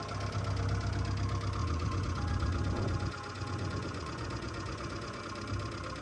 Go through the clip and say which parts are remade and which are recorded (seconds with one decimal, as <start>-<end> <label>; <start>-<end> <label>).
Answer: 0.0-1.6 recorded; 1.6-5.2 remade; 5.2-6.0 recorded